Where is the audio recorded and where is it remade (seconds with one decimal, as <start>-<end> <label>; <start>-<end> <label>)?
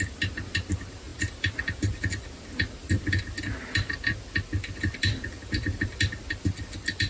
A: 0.0-1.1 recorded; 1.1-1.6 remade; 1.6-7.1 recorded